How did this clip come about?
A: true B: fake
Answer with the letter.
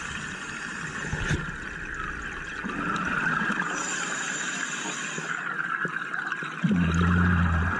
A